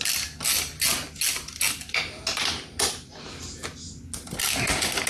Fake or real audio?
real